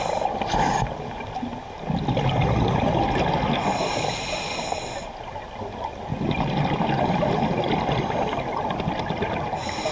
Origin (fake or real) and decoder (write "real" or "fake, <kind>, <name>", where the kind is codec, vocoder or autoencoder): real